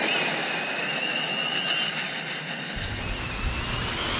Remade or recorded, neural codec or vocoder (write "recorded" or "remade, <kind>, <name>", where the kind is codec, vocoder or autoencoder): recorded